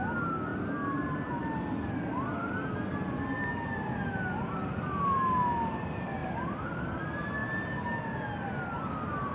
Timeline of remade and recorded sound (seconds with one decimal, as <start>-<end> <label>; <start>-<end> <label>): 0.0-6.2 recorded; 6.2-7.0 remade; 7.0-9.3 recorded

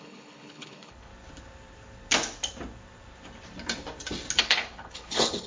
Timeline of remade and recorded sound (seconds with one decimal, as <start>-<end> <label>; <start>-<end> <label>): 0.0-1.1 remade; 1.1-4.4 recorded; 4.4-5.5 remade